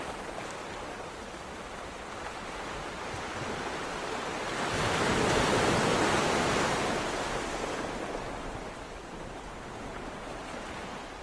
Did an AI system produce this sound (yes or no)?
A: no